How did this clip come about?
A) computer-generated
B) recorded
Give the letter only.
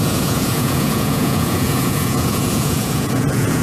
A